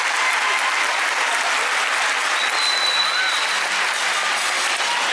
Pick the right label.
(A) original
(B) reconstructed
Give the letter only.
A